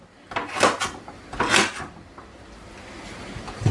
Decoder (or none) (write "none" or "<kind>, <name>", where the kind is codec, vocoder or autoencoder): none